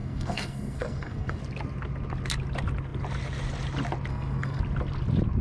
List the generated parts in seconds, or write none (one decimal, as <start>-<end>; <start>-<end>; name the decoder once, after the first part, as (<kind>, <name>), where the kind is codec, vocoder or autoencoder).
0.0-1.4 (codec, SNAC); 4.1-4.6